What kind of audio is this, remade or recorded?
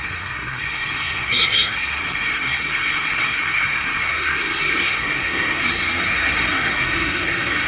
remade